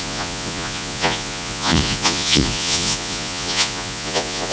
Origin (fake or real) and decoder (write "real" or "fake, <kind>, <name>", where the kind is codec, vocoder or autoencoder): fake, vocoder, Vocos